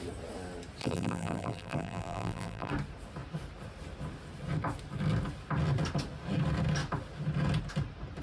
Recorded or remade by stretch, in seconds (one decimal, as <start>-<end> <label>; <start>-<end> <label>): 0.0-0.8 recorded; 0.8-2.7 remade; 2.7-8.2 recorded